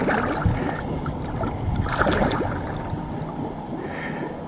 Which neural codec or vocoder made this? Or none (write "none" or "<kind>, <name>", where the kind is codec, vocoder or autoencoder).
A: none